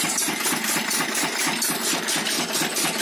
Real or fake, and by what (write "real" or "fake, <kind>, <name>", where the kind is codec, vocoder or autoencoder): real